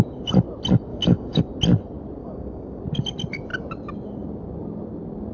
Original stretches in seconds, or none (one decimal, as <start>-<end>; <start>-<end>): 0.0-0.9; 1.4-2.2; 2.8-5.3